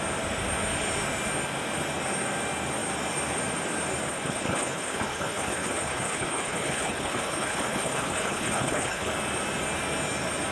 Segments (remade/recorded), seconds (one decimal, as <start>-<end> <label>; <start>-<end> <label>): 0.0-4.1 recorded; 4.1-9.1 remade; 9.1-10.5 recorded